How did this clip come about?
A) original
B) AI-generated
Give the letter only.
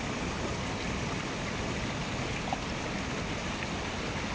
A